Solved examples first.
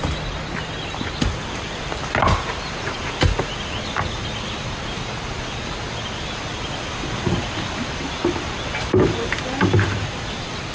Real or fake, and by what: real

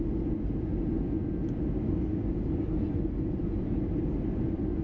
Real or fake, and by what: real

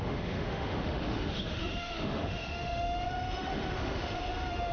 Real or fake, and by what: fake, autoencoder, DAC-VAE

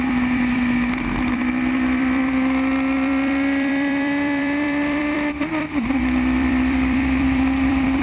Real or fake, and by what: fake, vocoder, BigVGAN v2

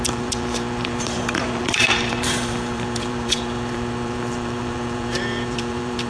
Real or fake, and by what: fake, vocoder, BigVGAN v2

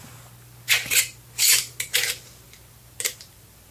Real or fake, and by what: real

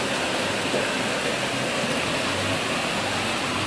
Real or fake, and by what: real